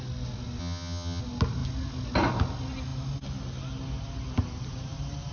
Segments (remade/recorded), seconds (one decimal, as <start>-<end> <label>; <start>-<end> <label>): 0.0-0.6 recorded; 0.6-1.2 remade; 1.2-5.3 recorded